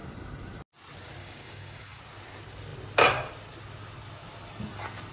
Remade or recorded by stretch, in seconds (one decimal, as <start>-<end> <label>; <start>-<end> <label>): 0.0-1.2 recorded; 1.2-2.0 remade; 2.0-5.1 recorded